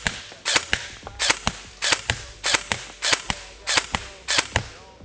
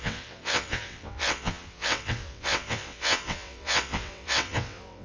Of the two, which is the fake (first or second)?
second